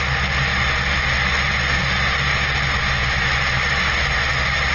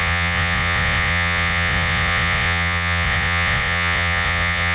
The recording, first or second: first